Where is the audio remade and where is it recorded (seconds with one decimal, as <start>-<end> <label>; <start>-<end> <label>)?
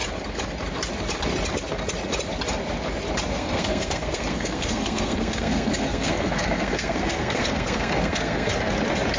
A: 0.0-3.3 recorded; 3.3-8.5 remade; 8.5-9.2 recorded